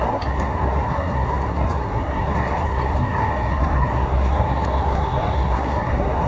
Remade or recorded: remade